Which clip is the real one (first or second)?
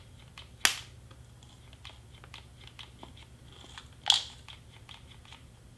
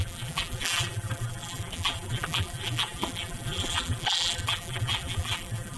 first